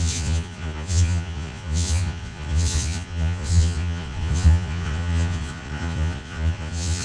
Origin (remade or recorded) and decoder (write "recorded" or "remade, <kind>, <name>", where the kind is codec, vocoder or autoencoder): remade, vocoder, Vocos